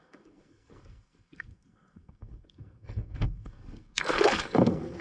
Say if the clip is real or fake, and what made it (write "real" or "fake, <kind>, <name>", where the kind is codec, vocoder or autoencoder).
fake, codec, SNAC